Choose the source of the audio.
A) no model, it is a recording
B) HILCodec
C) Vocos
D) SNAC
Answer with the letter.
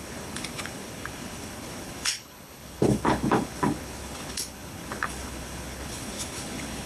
B